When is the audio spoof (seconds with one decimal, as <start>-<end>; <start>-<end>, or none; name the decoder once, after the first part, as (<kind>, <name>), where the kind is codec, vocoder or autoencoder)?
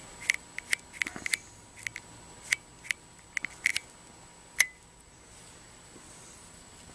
none